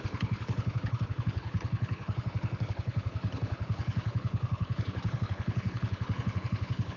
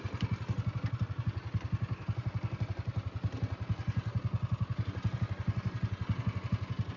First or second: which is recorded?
second